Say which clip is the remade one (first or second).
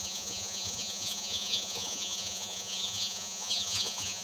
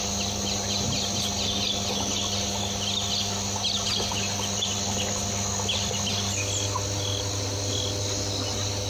first